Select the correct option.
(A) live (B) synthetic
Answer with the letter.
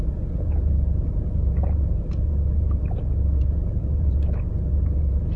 B